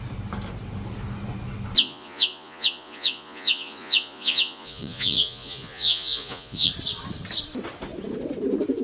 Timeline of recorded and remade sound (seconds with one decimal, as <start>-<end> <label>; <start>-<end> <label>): 0.0-1.8 recorded; 1.8-6.7 remade; 6.7-8.8 recorded